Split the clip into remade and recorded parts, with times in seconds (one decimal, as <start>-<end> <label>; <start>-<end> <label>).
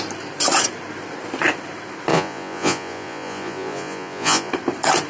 0.0-2.1 recorded; 2.1-4.5 remade; 4.5-5.1 recorded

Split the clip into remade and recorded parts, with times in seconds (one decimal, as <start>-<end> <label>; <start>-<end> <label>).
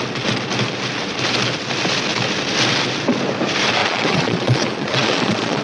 0.0-3.8 recorded; 3.8-5.6 remade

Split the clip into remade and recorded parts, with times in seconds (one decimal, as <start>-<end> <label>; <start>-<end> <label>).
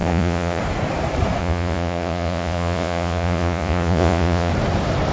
0.0-0.6 remade; 0.6-1.4 recorded; 1.4-4.5 remade; 4.5-5.1 recorded